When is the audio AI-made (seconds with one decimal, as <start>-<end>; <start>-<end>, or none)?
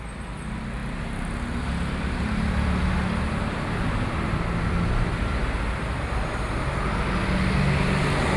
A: none